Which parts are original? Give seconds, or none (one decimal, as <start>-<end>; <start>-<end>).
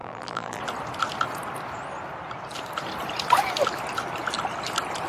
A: 0.6-5.1